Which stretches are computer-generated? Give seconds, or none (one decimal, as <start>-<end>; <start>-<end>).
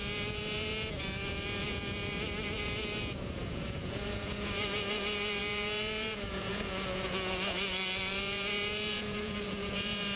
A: 0.0-10.2